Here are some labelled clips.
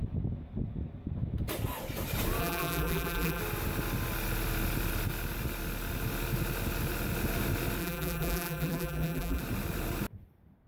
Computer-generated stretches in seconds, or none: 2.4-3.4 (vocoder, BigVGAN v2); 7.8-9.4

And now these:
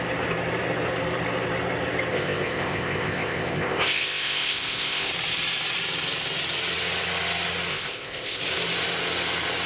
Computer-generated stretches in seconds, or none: 2.1-5.1 (codec, ZipCodec); 7.7-8.4

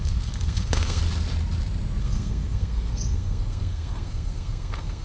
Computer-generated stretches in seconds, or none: 0.0-1.0 (codec, SNAC); 2.0-5.0

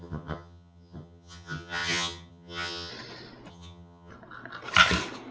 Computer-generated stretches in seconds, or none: 0.0-2.9 (vocoder, HiFi-GAN); 3.5-4.1